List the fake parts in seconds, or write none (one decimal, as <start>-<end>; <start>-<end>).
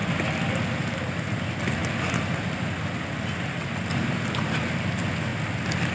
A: none